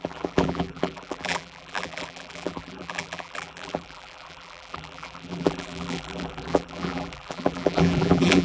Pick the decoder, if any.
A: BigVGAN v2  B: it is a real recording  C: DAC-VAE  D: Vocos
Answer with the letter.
A